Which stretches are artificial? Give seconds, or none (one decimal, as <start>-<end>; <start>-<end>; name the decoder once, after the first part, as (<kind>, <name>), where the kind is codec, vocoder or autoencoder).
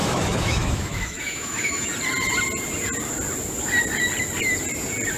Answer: 0.0-1.9 (autoencoder, DAC-VAE)